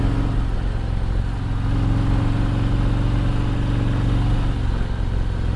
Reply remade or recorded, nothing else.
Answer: recorded